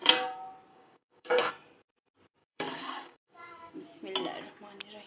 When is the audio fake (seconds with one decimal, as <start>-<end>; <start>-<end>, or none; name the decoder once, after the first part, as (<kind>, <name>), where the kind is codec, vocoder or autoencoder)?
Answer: 0.7-1.5 (codec, DAC); 2.4-3.7